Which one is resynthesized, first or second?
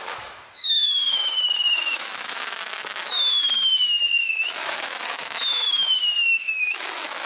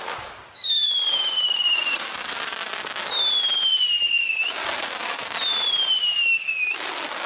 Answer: first